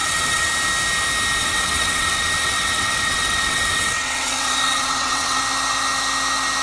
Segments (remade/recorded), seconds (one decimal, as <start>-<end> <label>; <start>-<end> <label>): 0.0-0.5 remade; 0.5-1.4 recorded; 1.4-5.4 remade; 5.4-6.6 recorded